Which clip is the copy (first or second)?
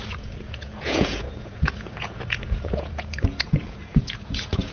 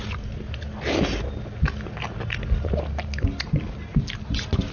first